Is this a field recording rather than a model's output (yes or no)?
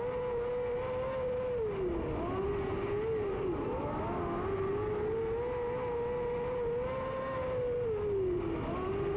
yes